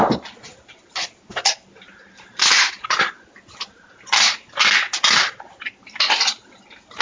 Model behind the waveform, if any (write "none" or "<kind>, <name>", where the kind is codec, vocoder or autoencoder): none